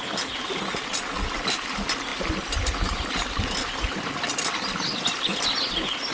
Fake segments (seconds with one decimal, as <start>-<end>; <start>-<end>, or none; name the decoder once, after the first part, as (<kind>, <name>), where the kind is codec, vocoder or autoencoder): none